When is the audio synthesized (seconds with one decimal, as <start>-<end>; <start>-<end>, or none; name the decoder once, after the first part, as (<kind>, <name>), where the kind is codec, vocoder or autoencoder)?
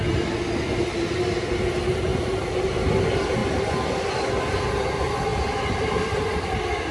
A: none